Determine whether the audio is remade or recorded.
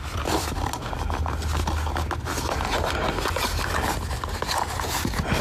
recorded